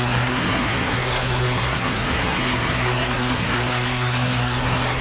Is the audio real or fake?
fake